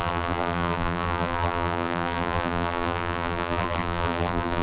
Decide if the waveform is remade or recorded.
remade